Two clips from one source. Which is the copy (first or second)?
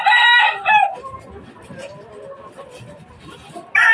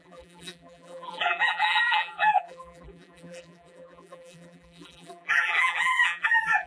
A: second